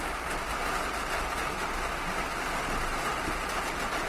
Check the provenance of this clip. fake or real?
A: real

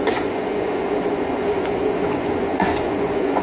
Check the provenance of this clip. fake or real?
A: fake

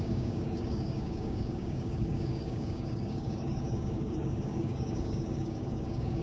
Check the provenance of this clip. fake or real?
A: fake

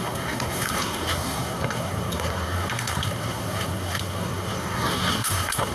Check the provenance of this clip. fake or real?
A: fake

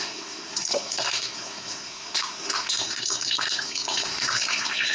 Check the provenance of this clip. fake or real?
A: fake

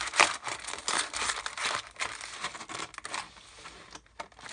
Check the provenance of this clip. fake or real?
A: real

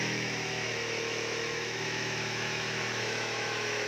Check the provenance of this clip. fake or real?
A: fake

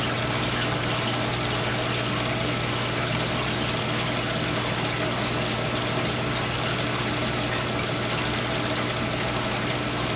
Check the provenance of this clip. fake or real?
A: real